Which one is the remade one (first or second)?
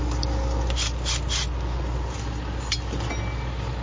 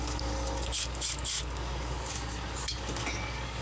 second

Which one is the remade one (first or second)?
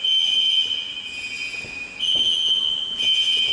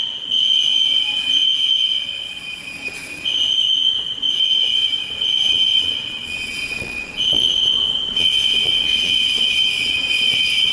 second